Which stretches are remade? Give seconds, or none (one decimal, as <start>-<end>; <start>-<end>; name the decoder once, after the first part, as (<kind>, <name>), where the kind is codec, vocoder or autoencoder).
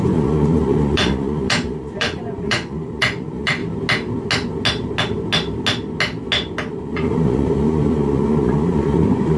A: 0.0-3.6 (vocoder, Vocos); 6.7-9.4